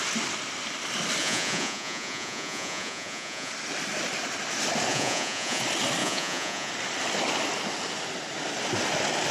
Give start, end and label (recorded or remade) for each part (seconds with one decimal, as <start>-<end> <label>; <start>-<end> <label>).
0.0-1.2 recorded; 1.2-3.5 remade; 3.5-4.9 recorded; 4.9-5.6 remade; 5.6-6.0 recorded; 6.0-6.7 remade; 6.7-9.3 recorded